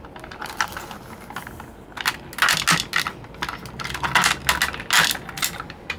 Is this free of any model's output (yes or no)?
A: yes